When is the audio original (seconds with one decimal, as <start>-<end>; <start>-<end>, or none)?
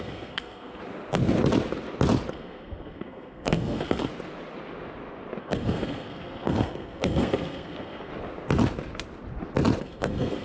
0.8-2.3; 4.1-5.4; 8.1-9.8